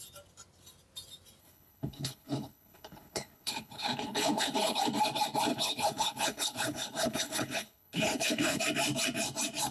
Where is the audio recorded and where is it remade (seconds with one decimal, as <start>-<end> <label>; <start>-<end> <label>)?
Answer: 0.0-1.4 recorded; 1.4-4.8 remade; 4.8-5.5 recorded; 5.5-8.6 remade; 8.6-9.7 recorded